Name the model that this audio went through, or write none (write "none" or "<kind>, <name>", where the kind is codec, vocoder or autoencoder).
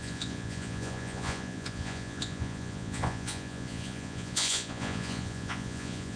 vocoder, Vocos